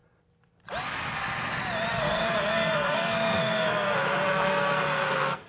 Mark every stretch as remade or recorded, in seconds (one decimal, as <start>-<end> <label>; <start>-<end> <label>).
0.0-1.9 recorded; 1.9-5.5 remade